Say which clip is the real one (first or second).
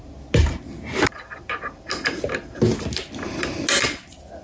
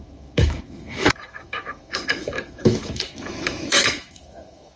first